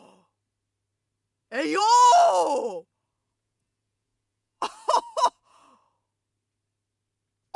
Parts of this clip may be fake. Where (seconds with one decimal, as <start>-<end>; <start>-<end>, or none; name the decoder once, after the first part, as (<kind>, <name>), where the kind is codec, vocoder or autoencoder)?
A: 3.2-5.7 (vocoder, Vocos)